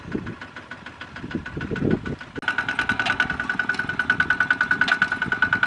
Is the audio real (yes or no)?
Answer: yes